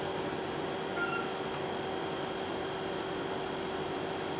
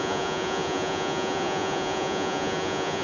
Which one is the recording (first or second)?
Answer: first